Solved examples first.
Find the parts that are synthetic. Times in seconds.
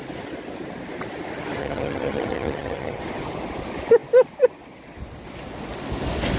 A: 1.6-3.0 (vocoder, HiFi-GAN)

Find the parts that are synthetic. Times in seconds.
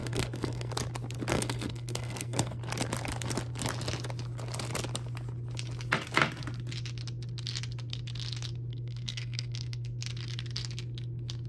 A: 0.0-0.7 (codec, SNAC); 1.3-2.6; 8.7-10.0